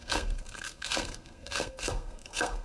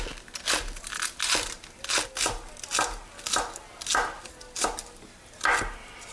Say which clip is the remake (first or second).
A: first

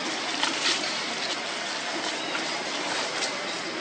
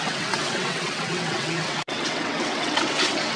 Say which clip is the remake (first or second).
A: second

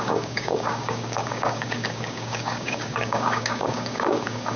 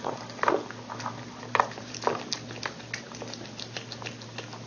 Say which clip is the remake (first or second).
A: first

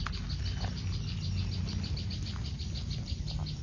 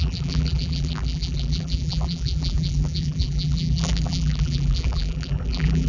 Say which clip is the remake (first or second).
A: second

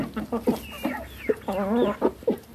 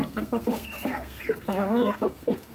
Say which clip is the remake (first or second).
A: second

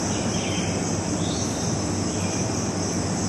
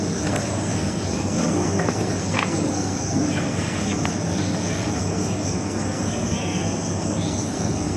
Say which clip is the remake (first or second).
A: second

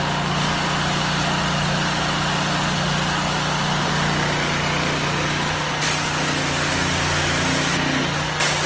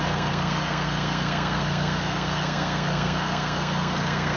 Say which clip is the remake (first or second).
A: second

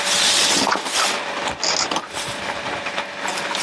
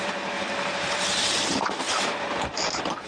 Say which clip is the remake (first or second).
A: second